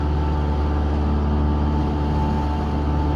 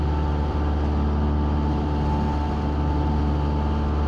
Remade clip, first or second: second